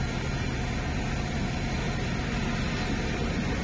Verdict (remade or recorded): recorded